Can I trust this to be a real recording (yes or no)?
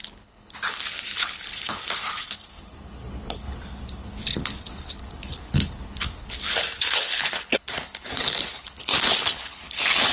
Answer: no